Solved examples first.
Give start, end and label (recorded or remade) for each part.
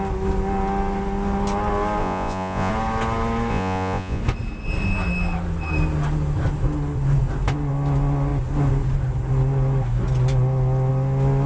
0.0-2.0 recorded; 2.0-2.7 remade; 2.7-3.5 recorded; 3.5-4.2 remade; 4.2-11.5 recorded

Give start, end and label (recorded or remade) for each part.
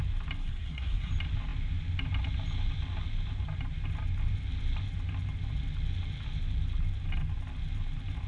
0.0-0.4 recorded; 0.4-1.1 remade; 1.1-8.3 recorded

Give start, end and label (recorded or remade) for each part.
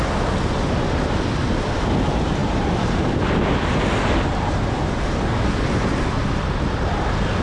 0.0-2.4 recorded; 2.4-5.2 remade; 5.2-7.4 recorded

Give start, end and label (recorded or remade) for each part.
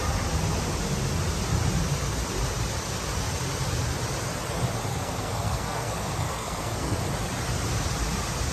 0.0-4.9 recorded; 4.9-7.0 remade; 7.0-8.5 recorded